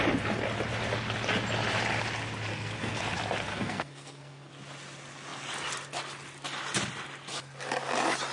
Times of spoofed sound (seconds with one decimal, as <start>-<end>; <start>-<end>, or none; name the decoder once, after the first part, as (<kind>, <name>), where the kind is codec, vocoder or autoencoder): 2.5-3.0 (codec, SNAC); 3.5-4.5